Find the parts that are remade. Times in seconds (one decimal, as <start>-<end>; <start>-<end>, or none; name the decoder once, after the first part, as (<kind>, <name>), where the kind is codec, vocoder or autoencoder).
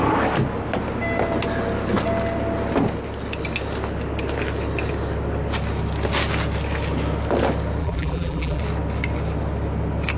7.8-8.6 (vocoder, BigVGAN v2)